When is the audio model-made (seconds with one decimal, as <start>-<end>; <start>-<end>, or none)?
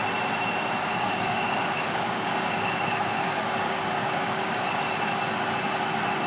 0.9-4.6